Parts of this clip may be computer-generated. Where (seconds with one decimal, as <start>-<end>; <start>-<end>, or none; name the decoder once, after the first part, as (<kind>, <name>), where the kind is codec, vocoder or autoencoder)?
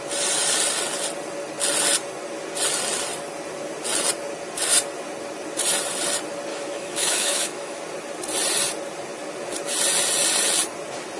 6.5-7.8 (autoencoder, DAC-VAE)